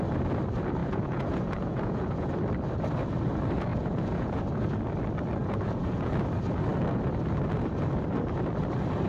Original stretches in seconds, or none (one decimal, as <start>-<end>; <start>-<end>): 0.0-0.8; 2.3-3.7; 4.4-5.4; 6.1-9.1